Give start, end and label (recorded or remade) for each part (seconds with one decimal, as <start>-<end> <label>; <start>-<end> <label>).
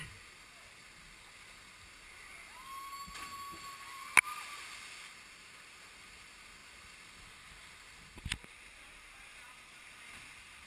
0.0-10.7 recorded